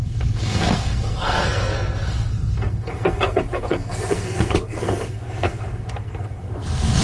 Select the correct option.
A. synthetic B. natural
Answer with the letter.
A